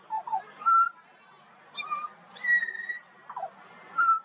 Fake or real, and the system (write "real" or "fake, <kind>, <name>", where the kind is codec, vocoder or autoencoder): real